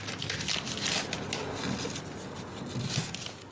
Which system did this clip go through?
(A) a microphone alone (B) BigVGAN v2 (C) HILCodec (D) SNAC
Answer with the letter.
A